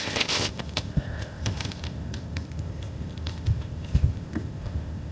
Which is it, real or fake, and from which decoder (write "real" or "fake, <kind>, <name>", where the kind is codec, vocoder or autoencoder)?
fake, codec, ZipCodec